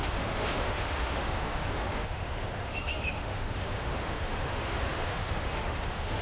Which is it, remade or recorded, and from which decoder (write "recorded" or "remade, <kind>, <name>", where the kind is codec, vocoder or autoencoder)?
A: remade, autoencoder, DAC-VAE